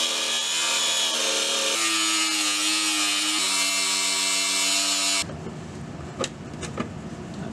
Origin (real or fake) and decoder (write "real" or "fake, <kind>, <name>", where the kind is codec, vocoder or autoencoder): real